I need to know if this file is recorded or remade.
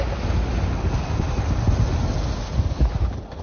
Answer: recorded